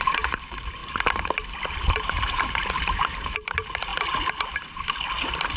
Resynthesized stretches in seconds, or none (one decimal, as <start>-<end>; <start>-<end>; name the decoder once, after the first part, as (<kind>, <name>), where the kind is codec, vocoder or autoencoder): 0.0-0.8 (vocoder, BigVGAN v2); 1.7-3.9